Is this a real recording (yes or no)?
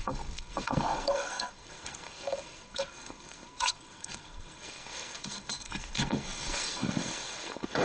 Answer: no